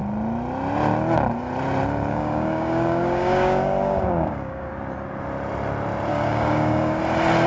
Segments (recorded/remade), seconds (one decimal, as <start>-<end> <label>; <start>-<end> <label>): 0.0-2.1 recorded; 2.1-4.7 remade; 4.7-6.1 recorded; 6.1-7.0 remade; 7.0-7.5 recorded